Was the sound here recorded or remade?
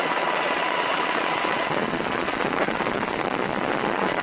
remade